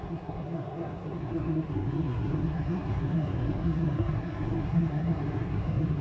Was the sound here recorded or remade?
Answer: remade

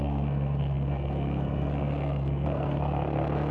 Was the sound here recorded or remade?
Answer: remade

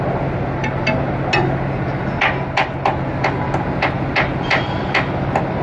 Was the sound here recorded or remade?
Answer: recorded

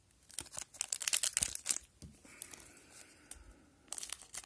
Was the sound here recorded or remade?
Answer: recorded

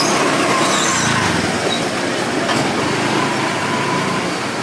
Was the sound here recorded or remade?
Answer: recorded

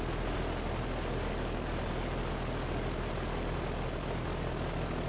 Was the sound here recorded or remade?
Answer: recorded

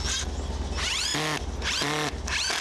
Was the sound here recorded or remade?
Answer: recorded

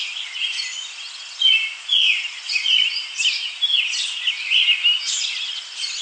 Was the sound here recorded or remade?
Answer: recorded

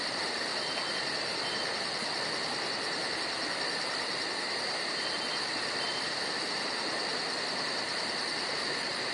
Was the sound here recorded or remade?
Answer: recorded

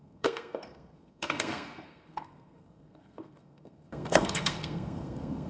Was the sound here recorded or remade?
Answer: remade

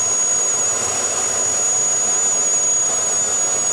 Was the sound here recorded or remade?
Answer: recorded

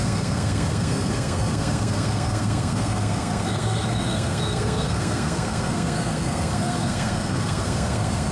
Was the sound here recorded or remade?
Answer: remade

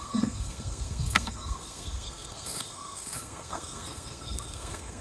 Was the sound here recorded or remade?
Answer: remade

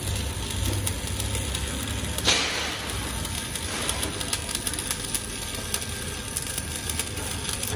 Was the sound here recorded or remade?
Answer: recorded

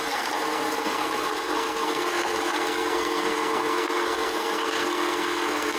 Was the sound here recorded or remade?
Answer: remade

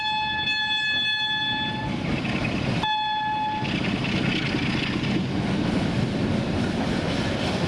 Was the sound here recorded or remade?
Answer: recorded